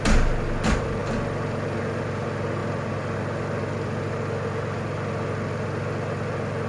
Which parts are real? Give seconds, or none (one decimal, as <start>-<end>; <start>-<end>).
0.0-6.7